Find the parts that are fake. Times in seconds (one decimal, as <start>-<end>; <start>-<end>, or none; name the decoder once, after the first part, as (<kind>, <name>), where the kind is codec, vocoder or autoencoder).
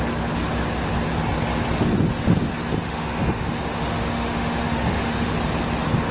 2.8-5.3 (autoencoder, DAC-VAE)